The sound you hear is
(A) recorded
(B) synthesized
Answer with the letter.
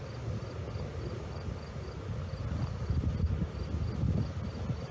A